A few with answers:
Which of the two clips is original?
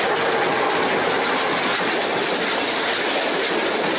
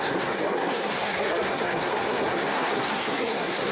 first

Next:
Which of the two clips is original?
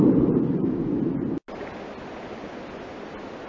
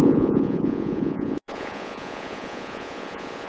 first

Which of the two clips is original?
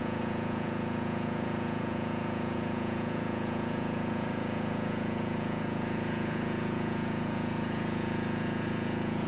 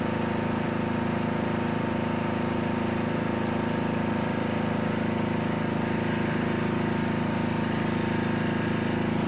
second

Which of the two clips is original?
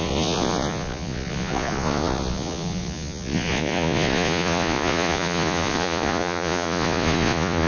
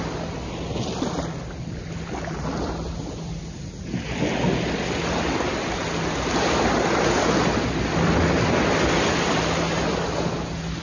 second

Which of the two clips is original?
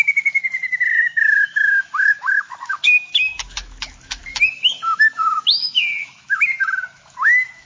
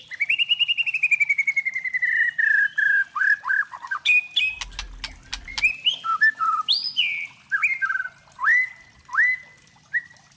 second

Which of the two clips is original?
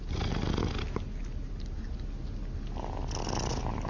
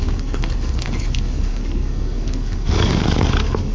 first